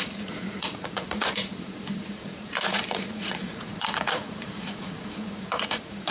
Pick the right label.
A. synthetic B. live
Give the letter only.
A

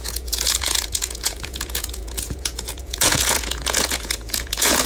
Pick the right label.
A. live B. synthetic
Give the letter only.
B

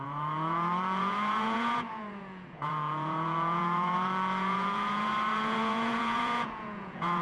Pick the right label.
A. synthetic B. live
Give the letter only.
A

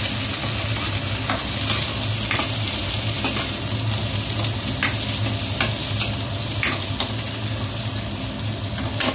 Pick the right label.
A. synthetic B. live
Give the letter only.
B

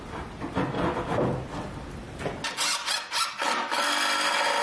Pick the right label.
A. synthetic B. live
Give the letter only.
B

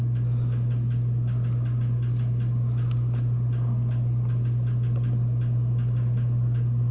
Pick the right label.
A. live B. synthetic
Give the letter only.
A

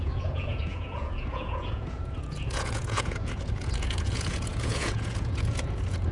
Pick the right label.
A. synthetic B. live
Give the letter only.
A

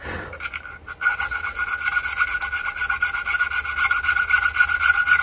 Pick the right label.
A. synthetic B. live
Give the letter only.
B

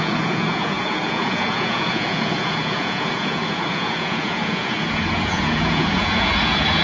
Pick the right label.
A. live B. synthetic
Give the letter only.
B